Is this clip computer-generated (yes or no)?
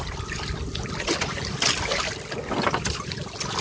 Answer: no